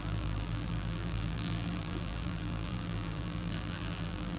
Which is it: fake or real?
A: fake